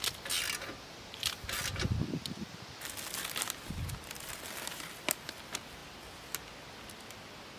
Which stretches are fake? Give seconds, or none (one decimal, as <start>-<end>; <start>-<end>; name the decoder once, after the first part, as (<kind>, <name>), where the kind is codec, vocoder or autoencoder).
none

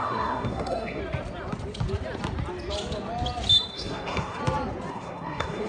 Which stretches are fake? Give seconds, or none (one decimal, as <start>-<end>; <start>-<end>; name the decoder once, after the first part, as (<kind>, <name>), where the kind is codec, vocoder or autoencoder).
0.0-1.0 (codec, SNAC); 3.7-4.4; 4.9-5.7

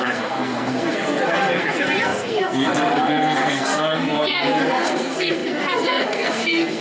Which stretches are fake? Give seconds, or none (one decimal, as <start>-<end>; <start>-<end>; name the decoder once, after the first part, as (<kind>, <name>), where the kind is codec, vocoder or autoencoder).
0.0-6.8 (codec, SNAC)

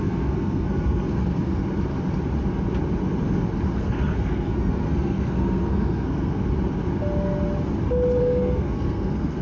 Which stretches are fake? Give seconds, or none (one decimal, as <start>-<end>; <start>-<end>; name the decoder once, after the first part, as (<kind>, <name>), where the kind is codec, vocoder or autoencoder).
0.0-1.6 (codec, SNAC); 3.8-6.4; 8.2-9.4

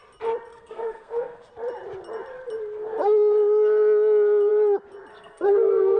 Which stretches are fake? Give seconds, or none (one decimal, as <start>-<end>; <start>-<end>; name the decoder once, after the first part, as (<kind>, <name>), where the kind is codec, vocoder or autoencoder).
0.5-1.5 (codec, SNAC); 5.1-6.0